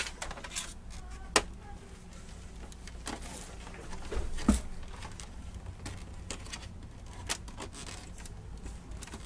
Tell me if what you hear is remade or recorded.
recorded